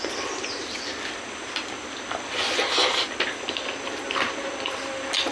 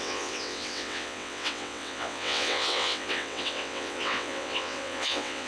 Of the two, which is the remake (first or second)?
second